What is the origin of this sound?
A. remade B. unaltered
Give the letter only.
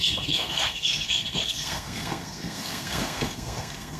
A